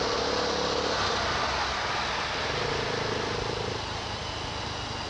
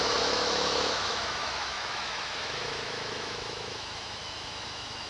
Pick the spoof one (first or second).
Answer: second